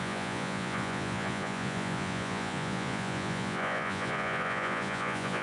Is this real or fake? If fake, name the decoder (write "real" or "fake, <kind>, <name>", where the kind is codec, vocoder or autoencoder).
fake, vocoder, Vocos